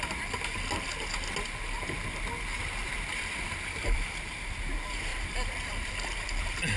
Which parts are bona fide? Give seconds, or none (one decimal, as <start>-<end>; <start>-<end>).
0.0-2.8; 4.3-5.1; 5.9-6.8